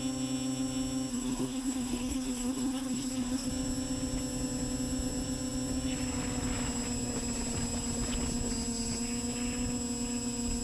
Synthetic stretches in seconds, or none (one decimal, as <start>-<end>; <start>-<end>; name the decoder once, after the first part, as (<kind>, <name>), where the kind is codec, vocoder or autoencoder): 1.1-3.5 (codec, SNAC)